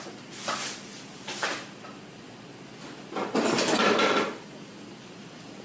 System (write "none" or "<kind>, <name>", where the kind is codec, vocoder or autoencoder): none